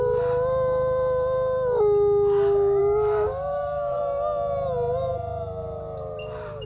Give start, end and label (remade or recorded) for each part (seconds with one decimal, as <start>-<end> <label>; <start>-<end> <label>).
0.0-2.8 recorded; 2.8-4.0 remade; 4.0-6.7 recorded